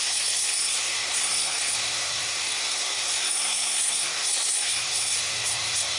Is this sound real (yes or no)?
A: no